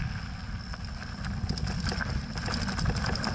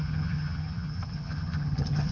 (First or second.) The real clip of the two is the first